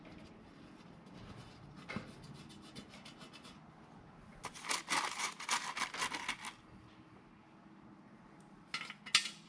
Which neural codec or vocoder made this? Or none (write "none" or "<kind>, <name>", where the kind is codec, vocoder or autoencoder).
none